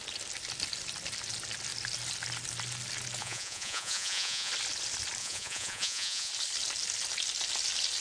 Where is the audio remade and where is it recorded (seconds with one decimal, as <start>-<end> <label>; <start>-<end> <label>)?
0.0-3.2 recorded; 3.2-4.5 remade; 4.5-5.2 recorded; 5.2-6.3 remade; 6.3-8.0 recorded